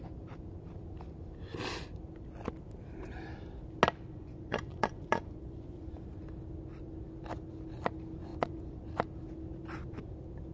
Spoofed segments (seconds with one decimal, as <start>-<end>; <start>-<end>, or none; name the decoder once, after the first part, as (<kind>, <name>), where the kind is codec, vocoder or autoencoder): 4.1-5.9 (vocoder, Vocos); 8.3-8.9